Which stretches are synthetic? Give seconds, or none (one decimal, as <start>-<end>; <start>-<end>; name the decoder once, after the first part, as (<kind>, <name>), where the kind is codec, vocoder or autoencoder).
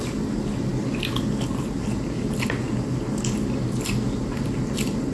none